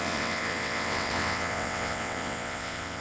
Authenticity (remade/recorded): remade